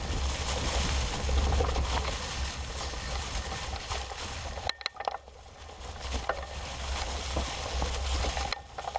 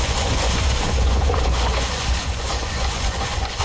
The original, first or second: first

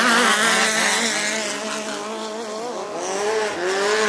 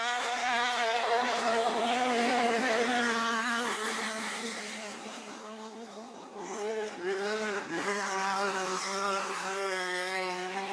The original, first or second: first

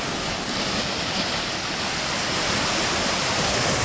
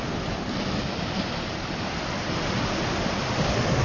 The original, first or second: second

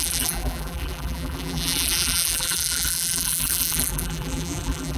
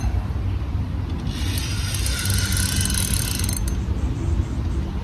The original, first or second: second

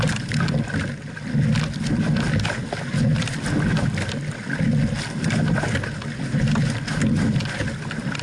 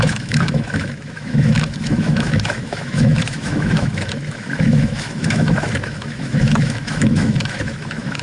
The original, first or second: first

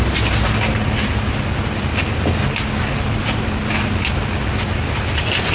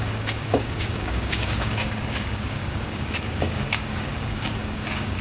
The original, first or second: first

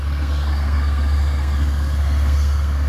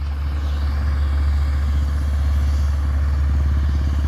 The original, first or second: second